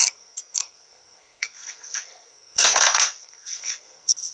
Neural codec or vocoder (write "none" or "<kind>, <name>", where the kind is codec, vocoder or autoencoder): codec, SNAC